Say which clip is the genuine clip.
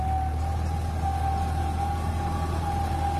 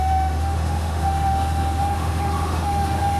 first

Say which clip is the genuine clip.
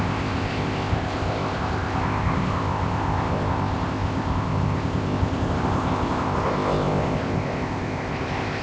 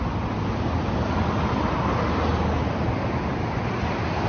second